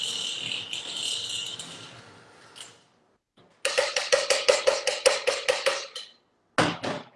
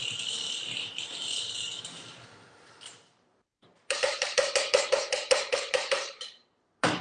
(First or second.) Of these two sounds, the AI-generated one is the second